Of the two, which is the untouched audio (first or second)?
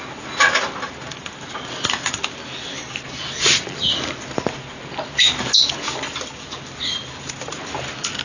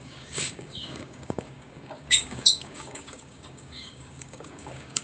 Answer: first